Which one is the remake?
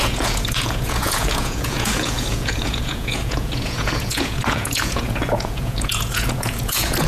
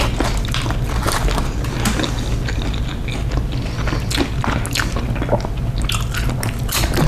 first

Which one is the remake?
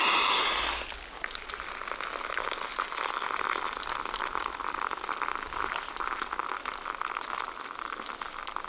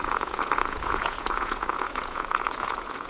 second